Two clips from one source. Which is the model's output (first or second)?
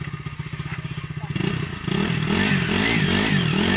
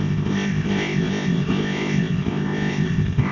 second